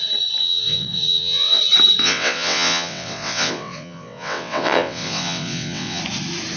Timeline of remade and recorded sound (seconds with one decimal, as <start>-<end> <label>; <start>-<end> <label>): 0.0-0.4 recorded; 0.4-1.6 remade; 1.6-2.0 recorded; 2.0-6.0 remade; 6.0-6.6 recorded